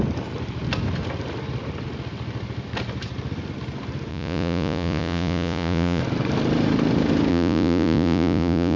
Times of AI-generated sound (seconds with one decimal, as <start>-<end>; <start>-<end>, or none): 4.1-6.0; 7.3-8.8